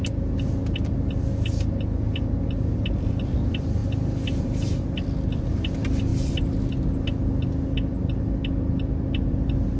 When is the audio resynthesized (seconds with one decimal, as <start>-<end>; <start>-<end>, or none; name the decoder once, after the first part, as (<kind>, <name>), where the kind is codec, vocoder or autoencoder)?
none